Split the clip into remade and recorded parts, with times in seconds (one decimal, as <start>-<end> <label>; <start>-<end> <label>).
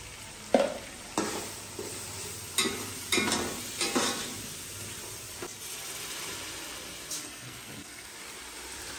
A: 0.0-7.2 recorded; 7.2-8.1 remade; 8.1-9.0 recorded